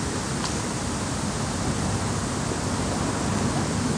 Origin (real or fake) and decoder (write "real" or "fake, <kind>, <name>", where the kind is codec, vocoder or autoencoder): real